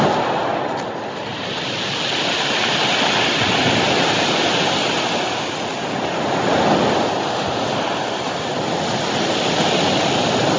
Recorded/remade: recorded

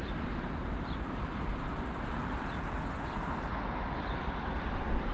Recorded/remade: recorded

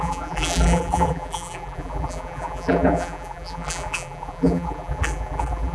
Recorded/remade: remade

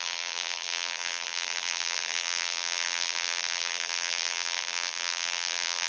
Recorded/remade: remade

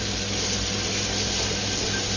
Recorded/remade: recorded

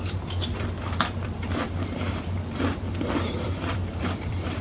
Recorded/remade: remade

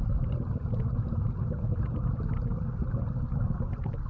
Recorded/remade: recorded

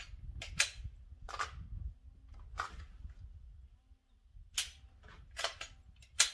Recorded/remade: recorded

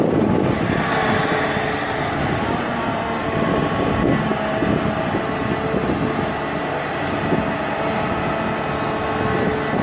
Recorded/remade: recorded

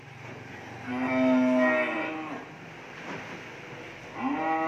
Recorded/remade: recorded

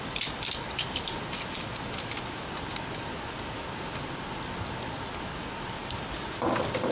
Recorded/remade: remade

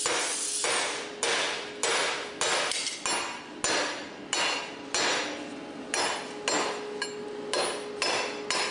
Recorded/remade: recorded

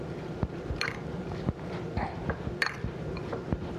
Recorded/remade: remade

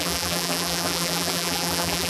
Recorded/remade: remade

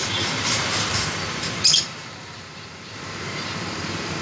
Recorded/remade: remade